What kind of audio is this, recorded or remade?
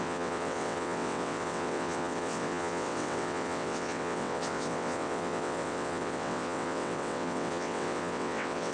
remade